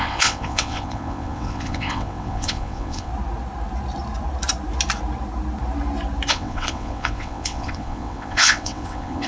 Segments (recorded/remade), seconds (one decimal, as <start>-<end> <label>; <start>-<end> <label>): 0.0-3.1 remade; 3.1-6.3 recorded; 6.3-9.3 remade